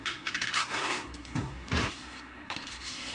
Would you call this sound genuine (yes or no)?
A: no